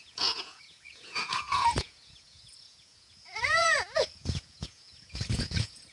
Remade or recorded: remade